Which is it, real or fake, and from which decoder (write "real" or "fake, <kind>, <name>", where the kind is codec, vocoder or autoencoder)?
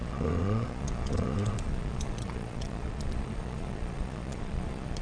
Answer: fake, vocoder, Vocos